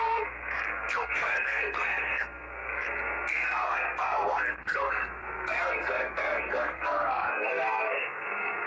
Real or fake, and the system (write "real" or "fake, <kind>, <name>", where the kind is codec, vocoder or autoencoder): fake, codec, SNAC